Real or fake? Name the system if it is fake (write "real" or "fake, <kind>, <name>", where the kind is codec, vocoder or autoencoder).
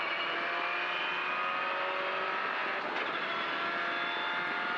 real